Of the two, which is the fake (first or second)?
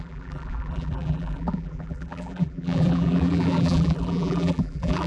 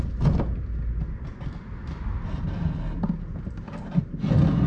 first